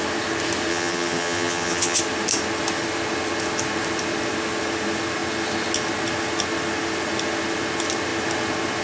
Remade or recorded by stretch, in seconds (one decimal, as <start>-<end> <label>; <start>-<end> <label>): 0.0-0.7 recorded; 0.7-2.0 remade; 2.0-8.8 recorded